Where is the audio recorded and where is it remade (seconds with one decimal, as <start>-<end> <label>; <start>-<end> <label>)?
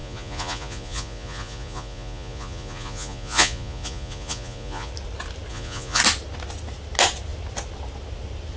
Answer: 0.0-4.9 remade; 4.9-5.5 recorded; 5.5-6.0 remade; 6.0-8.6 recorded